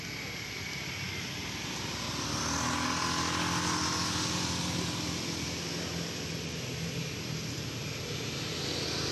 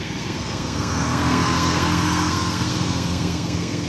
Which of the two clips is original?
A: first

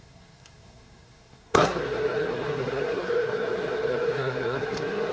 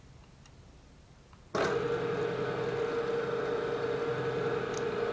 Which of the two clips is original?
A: second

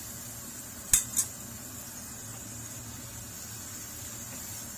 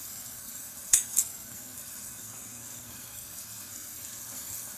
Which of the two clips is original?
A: first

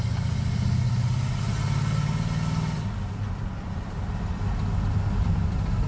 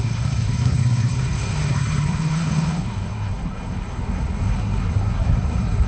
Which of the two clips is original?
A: first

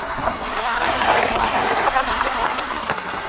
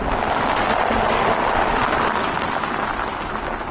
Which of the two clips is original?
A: second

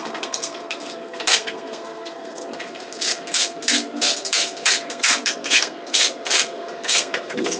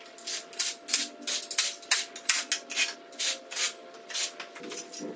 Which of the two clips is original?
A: second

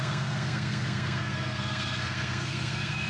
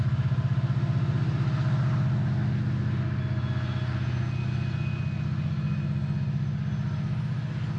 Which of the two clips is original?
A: second